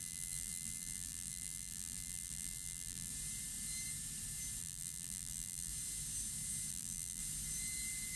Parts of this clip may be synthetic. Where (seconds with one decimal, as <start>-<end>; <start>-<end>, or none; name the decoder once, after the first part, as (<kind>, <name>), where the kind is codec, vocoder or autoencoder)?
0.0-3.1 (vocoder, BigVGAN v2); 4.6-5.7; 6.7-7.2